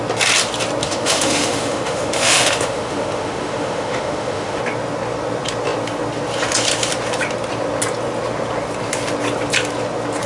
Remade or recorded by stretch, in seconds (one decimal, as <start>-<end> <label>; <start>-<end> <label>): 0.0-0.8 recorded; 0.8-4.6 remade; 4.6-10.3 recorded